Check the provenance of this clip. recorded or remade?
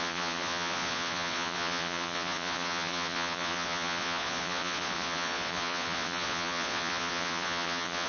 remade